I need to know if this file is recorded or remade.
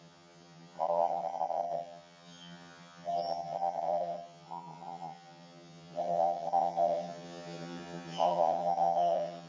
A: remade